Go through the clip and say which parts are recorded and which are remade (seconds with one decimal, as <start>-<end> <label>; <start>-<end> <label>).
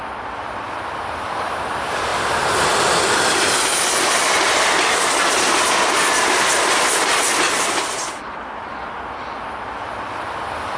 0.0-10.8 recorded